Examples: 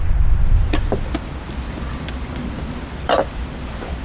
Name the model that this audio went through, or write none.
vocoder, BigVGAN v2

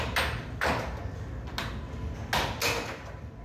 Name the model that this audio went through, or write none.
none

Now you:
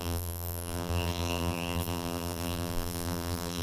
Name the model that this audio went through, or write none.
vocoder, BigVGAN v2